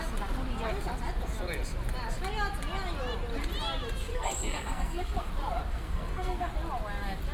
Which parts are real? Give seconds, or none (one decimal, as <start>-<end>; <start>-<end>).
0.0-4.1; 5.3-5.7; 6.5-7.3